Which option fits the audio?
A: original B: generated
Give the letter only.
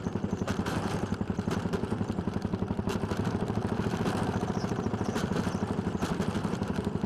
B